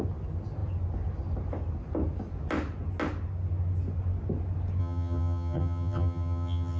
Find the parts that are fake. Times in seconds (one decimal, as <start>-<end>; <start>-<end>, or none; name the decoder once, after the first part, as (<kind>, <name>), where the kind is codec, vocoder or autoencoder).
4.8-6.8 (vocoder, HiFi-GAN)